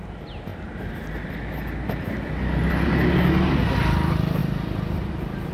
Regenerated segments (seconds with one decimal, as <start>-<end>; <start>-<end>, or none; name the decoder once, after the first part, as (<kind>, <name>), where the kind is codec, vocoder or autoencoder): none